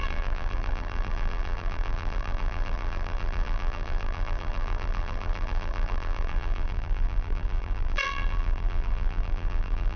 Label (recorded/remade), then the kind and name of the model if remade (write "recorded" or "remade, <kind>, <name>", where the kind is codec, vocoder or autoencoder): remade, vocoder, BigVGAN v2